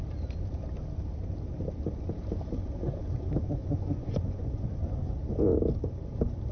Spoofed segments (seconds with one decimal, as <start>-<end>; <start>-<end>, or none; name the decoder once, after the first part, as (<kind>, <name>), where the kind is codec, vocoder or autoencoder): 3.6-4.8 (vocoder, Vocos)